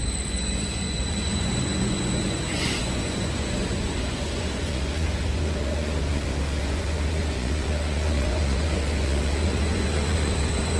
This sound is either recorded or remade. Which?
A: remade